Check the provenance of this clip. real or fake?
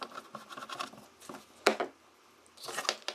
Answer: real